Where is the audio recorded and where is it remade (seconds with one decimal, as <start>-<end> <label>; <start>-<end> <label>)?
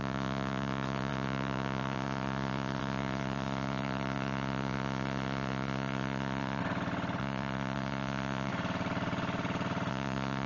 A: 0.0-6.6 remade; 6.6-7.2 recorded; 7.2-8.5 remade; 8.5-9.9 recorded; 9.9-10.5 remade